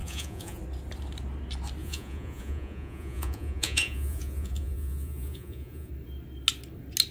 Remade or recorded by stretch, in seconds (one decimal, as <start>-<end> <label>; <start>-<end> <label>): 0.0-0.6 remade; 0.6-1.8 recorded; 1.8-5.9 remade; 5.9-7.1 recorded